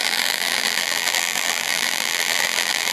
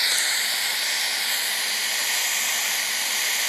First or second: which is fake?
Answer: first